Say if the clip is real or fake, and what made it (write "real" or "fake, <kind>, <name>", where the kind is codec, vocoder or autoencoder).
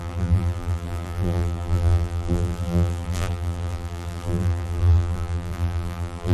fake, vocoder, BigVGAN v2